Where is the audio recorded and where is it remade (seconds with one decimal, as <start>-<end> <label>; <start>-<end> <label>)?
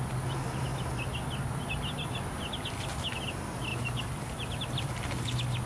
0.0-5.7 recorded